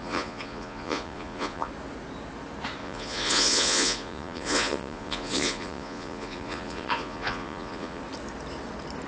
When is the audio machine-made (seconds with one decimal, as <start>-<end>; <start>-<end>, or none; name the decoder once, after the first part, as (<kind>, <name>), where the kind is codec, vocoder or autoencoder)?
0.0-1.7 (vocoder, Vocos); 2.8-8.0